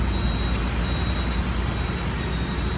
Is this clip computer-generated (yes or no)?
no